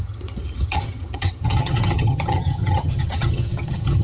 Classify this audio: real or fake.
fake